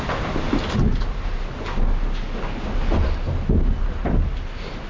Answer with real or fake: real